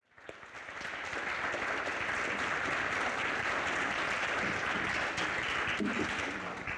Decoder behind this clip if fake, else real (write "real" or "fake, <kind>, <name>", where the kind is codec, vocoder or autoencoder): real